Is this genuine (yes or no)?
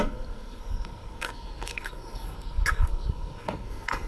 no